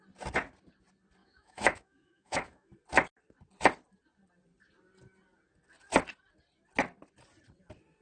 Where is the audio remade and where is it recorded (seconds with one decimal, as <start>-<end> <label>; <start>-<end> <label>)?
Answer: 0.0-1.2 recorded; 1.2-2.7 remade; 2.7-8.0 recorded